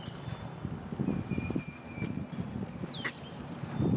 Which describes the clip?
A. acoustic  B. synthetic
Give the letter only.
B